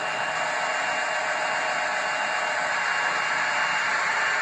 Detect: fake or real real